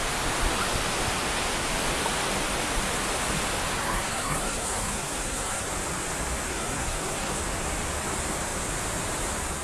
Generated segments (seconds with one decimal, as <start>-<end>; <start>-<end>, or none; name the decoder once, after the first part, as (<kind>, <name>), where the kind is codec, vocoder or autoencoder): 3.8-5.7 (codec, SNAC); 6.5-7.4